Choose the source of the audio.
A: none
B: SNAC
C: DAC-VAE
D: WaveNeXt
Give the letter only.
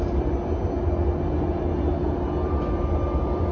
A